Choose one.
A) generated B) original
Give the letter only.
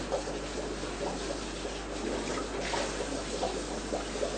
B